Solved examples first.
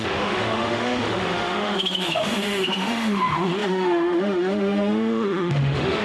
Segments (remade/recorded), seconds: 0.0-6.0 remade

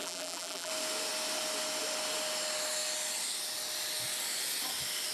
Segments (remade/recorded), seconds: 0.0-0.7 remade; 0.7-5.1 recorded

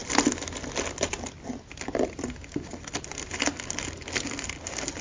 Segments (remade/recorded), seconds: 0.0-5.0 recorded

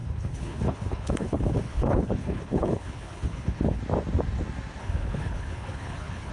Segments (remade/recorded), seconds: 0.0-3.8 remade; 3.8-4.8 recorded; 4.8-6.3 remade

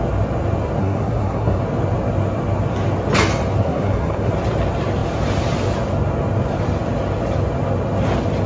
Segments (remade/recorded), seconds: 0.0-0.8 recorded; 0.8-1.6 remade; 1.6-3.6 recorded; 3.6-4.3 remade; 4.3-8.5 recorded

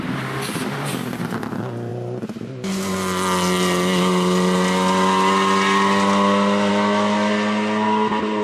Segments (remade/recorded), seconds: 0.0-8.4 recorded

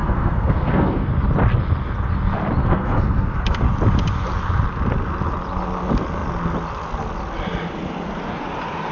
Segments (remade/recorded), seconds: 0.0-1.1 remade; 1.1-2.6 recorded; 2.6-3.6 remade; 3.6-8.9 recorded